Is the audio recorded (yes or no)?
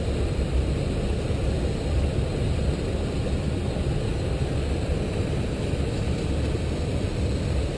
yes